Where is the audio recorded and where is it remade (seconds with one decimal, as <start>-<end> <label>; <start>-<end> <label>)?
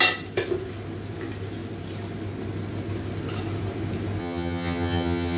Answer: 0.0-4.2 recorded; 4.2-5.4 remade